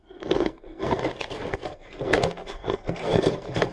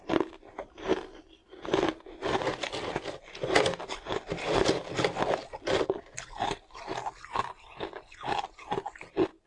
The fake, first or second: first